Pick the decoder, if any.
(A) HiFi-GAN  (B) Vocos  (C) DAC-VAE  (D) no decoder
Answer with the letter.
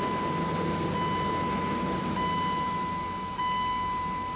D